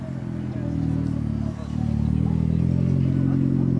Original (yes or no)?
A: yes